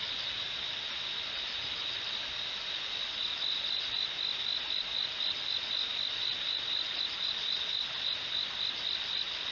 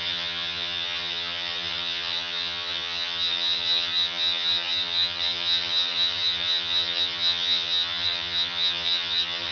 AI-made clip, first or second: second